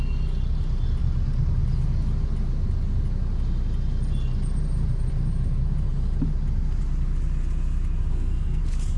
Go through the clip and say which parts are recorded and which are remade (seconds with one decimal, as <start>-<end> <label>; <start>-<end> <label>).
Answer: 0.0-8.1 recorded; 8.1-8.6 remade; 8.6-9.0 recorded